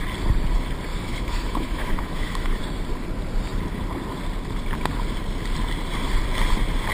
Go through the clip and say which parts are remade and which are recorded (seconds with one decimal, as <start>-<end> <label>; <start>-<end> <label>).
0.0-0.9 recorded; 0.9-2.6 remade; 2.6-6.9 recorded

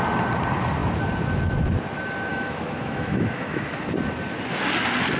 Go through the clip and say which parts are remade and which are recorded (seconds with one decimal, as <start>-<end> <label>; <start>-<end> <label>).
0.0-2.3 recorded; 2.3-3.7 remade; 3.7-5.2 recorded

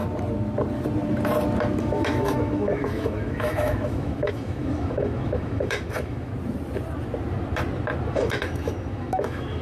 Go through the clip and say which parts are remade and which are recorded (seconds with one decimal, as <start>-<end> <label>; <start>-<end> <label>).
0.0-1.8 recorded; 1.8-6.3 remade; 6.3-8.1 recorded; 8.1-9.6 remade

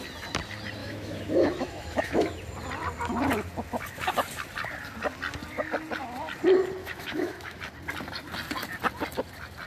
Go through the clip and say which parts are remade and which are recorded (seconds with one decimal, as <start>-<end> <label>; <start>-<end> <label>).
0.0-0.8 recorded; 0.8-2.4 remade; 2.4-6.8 recorded; 6.8-7.6 remade; 7.6-9.7 recorded

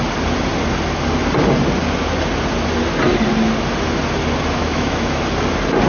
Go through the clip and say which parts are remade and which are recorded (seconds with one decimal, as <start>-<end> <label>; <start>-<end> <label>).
0.0-4.6 recorded; 4.6-5.2 remade; 5.2-5.9 recorded

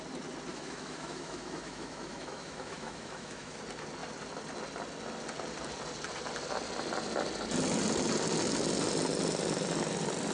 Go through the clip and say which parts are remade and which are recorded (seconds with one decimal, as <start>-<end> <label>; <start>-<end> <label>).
0.0-0.5 recorded; 0.5-3.6 remade; 3.6-10.3 recorded